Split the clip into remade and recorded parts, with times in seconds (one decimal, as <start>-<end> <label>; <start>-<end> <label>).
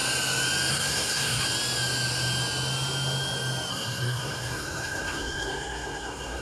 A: 0.0-0.7 recorded; 0.7-1.4 remade; 1.4-3.7 recorded; 3.7-6.4 remade